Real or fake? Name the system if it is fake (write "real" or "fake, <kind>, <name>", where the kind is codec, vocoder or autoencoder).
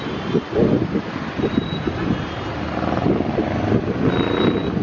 real